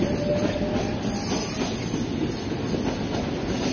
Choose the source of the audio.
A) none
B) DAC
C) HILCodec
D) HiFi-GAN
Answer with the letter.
A